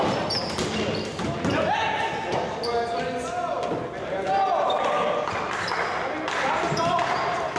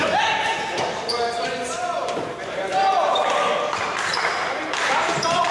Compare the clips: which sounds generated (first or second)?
second